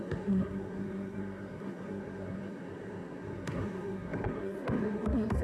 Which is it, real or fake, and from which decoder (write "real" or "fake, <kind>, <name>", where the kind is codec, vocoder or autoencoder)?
fake, codec, SNAC